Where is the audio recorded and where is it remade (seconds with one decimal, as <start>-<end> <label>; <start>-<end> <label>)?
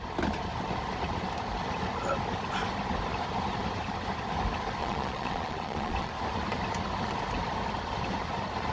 0.0-4.8 recorded; 4.8-6.1 remade; 6.1-8.7 recorded